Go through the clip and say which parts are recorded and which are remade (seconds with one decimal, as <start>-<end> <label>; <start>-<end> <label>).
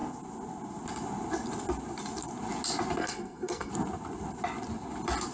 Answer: 0.0-3.0 recorded; 3.0-3.7 remade; 3.7-5.3 recorded